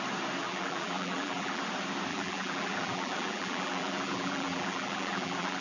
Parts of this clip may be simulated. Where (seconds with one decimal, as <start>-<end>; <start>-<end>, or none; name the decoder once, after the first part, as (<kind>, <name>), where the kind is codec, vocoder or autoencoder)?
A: 0.4-1.6 (vocoder, BigVGAN v2); 2.1-5.6